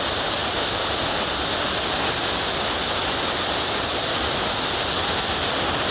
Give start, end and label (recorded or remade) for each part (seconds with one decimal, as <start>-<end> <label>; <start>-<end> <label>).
0.0-5.9 recorded